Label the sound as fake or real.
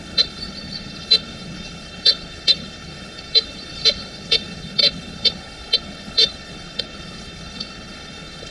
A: fake